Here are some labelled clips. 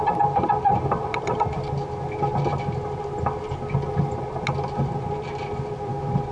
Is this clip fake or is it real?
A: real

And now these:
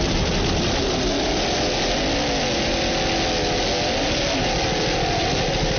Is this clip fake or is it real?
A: real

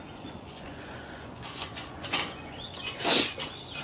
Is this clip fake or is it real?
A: fake